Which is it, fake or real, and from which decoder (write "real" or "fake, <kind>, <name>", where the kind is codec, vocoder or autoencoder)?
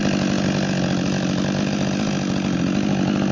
real